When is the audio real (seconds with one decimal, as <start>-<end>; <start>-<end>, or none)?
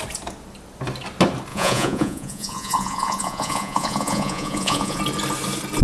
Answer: 0.0-1.5; 5.0-5.8